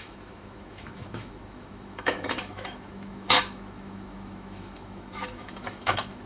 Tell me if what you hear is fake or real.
fake